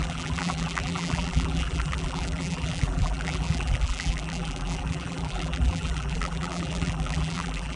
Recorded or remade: remade